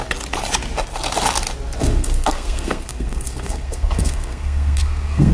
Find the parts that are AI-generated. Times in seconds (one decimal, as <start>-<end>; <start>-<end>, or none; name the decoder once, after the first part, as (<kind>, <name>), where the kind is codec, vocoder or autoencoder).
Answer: 1.8-5.3 (codec, SNAC)